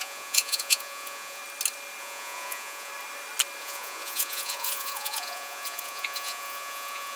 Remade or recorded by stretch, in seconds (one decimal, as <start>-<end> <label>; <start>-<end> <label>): 0.0-1.4 remade; 1.4-2.0 recorded; 2.0-2.9 remade; 2.9-3.6 recorded; 3.6-7.2 remade